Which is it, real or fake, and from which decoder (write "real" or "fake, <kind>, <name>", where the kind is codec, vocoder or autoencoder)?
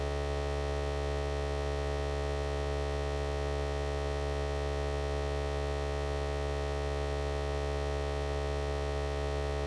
real